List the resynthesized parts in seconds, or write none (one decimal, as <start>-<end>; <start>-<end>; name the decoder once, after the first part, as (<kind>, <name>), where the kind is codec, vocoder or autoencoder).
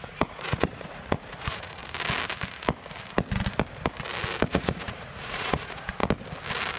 0.0-1.8 (vocoder, Vocos); 4.5-6.0